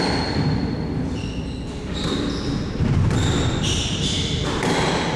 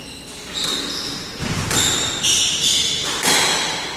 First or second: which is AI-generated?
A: first